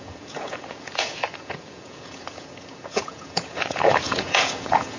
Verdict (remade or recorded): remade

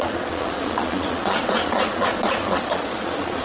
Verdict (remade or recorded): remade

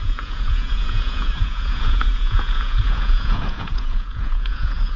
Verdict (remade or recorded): remade